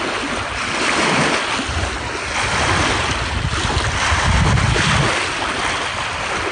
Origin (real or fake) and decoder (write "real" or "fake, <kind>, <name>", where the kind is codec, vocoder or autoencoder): real